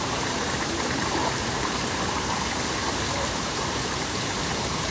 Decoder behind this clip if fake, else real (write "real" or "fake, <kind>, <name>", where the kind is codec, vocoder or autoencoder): fake, vocoder, BigVGAN v2